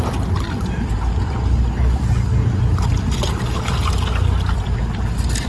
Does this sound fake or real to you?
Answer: real